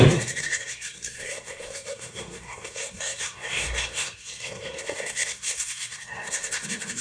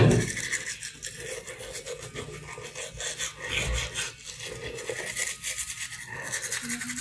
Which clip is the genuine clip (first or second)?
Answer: second